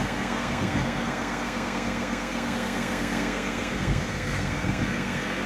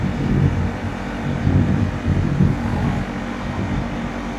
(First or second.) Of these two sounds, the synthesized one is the first